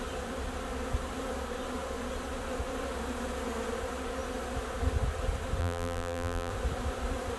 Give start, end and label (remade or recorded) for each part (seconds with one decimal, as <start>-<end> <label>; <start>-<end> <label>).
0.0-5.6 recorded; 5.6-6.5 remade; 6.5-7.4 recorded